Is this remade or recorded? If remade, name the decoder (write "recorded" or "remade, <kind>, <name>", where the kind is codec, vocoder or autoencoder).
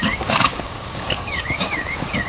remade, codec, DAC